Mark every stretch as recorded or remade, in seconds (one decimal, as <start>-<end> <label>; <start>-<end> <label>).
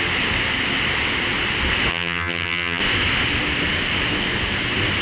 0.0-1.9 recorded; 1.9-2.8 remade; 2.8-5.0 recorded